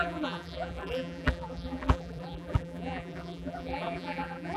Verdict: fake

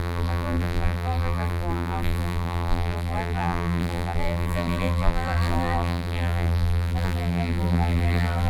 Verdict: fake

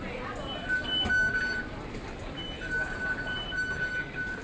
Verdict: real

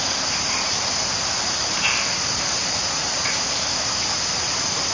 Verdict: real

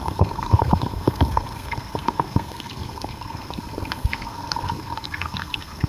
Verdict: fake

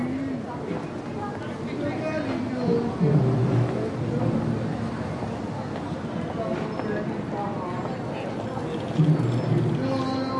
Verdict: real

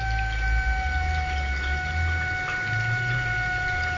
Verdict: real